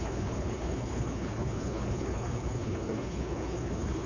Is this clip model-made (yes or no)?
yes